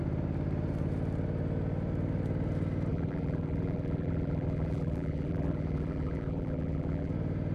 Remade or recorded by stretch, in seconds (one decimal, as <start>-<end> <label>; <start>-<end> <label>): 0.0-2.9 recorded; 2.9-7.1 remade; 7.1-7.5 recorded